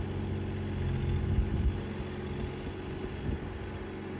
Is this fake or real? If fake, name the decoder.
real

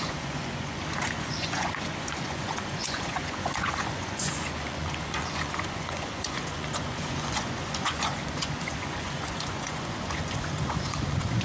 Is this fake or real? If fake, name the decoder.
fake, vocoder, Vocos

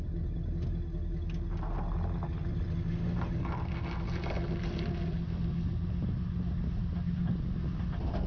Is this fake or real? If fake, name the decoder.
real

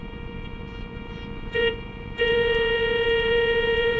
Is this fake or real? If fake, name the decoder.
fake, vocoder, Vocos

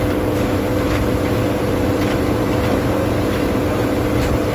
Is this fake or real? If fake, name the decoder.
real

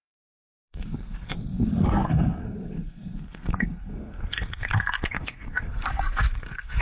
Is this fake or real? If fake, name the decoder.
fake, codec, SNAC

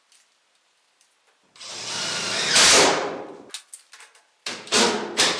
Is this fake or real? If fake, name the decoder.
real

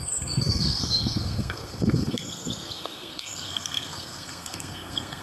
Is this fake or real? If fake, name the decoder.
fake, codec, SNAC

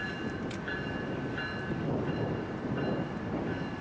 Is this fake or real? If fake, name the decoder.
real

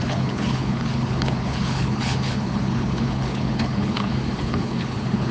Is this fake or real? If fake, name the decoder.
fake, codec, HILCodec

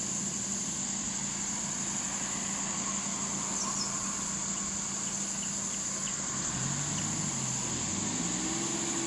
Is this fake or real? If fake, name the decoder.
real